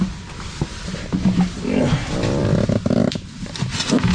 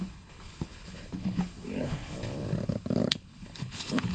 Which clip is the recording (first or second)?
first